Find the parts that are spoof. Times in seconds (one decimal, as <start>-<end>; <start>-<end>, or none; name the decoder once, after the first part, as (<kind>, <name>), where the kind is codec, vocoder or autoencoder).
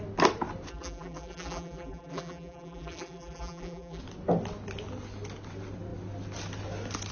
0.7-4.0 (vocoder, BigVGAN v2)